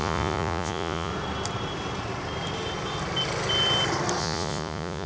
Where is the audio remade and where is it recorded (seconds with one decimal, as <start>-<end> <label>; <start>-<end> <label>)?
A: 0.0-1.1 remade; 1.1-4.2 recorded; 4.2-5.1 remade